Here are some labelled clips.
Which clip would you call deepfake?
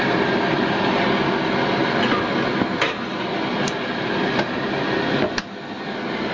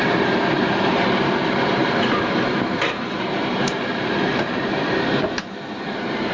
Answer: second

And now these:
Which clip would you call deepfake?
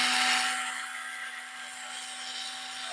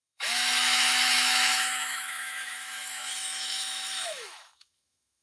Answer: second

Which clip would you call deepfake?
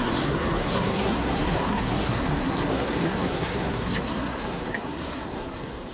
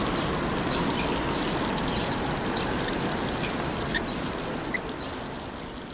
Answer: first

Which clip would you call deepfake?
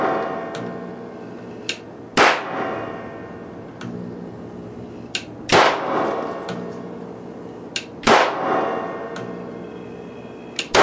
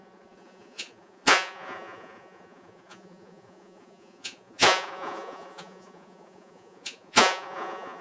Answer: second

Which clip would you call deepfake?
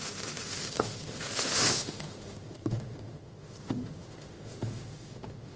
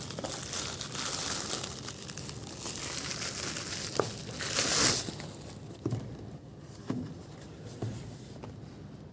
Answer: first